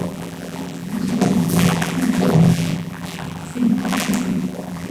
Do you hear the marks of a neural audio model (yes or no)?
yes